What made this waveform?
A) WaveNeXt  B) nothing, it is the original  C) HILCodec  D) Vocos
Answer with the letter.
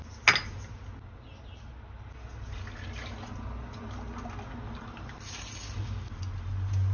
B